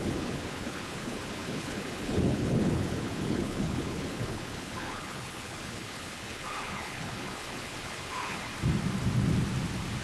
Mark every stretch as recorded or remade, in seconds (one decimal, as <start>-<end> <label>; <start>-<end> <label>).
0.0-8.5 remade; 8.5-10.0 recorded